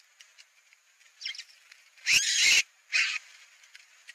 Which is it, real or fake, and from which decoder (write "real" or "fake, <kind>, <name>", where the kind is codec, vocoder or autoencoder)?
fake, vocoder, BigVGAN v2